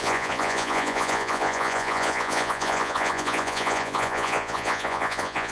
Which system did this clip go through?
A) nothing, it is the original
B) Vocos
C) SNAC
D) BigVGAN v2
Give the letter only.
B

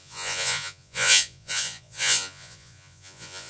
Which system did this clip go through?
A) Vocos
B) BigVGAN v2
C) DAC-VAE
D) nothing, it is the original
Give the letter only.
A